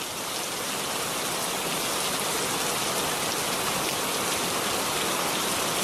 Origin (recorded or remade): recorded